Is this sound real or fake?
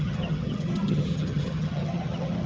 fake